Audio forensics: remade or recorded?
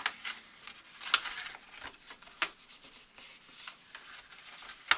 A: recorded